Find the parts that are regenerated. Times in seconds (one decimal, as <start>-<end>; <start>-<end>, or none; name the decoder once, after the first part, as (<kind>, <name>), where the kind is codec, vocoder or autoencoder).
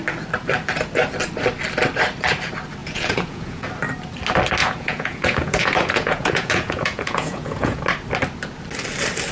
2.8-3.7 (vocoder, Vocos); 4.6-7.8